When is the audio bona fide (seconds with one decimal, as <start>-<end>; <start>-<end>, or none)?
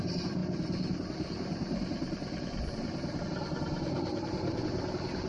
0.0-5.3